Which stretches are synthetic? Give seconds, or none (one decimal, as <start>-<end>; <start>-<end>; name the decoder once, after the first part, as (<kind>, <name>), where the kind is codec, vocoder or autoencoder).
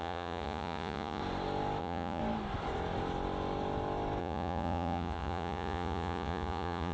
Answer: 0.0-1.2 (vocoder, Vocos); 1.8-2.2; 4.2-6.9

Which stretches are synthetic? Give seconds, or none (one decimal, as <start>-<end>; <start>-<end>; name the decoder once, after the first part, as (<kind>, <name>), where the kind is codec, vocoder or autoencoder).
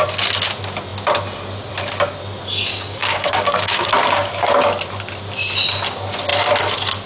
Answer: 2.7-3.9 (codec, DAC)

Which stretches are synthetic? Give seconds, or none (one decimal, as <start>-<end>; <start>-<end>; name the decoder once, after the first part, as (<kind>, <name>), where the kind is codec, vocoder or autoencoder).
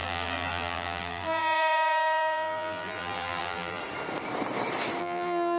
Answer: 0.0-3.8 (vocoder, BigVGAN v2); 5.0-5.6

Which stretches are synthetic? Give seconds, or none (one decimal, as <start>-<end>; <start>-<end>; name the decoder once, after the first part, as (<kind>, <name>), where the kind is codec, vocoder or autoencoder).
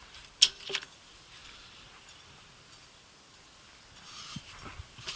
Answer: none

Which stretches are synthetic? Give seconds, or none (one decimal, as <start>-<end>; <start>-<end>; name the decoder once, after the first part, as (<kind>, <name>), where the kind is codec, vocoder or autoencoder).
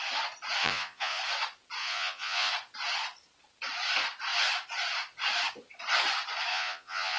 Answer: 0.6-1.2 (vocoder, Vocos); 1.8-2.5; 6.5-7.2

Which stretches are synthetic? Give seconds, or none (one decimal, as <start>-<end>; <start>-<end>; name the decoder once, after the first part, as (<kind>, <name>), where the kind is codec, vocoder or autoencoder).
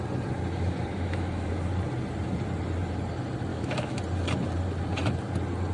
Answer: 0.9-1.5 (autoencoder, DAC-VAE); 3.5-4.0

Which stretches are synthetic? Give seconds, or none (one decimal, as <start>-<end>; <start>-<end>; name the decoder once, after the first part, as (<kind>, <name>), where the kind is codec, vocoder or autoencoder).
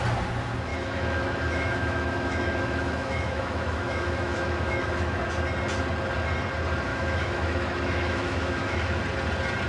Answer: 0.7-5.2 (autoencoder, DAC-VAE); 6.9-9.0